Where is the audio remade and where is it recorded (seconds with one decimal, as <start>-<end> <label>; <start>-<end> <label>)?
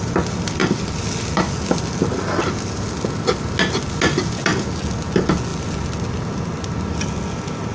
0.0-7.7 recorded